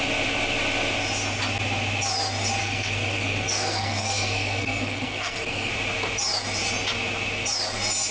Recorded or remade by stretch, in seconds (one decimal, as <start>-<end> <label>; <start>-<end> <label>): 0.0-2.6 recorded; 2.6-5.7 remade; 5.7-8.1 recorded